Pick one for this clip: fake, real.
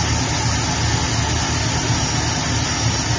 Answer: real